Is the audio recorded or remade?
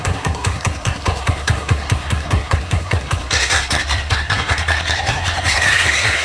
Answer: remade